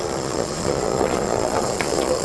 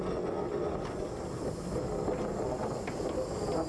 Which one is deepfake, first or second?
first